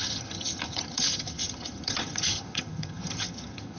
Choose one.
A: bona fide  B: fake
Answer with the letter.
B